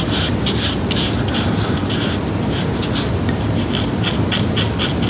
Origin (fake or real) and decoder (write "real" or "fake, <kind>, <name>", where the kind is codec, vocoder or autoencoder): real